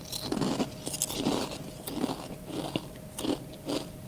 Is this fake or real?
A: real